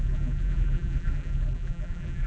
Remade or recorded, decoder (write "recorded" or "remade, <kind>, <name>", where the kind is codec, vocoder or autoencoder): remade, vocoder, BigVGAN v2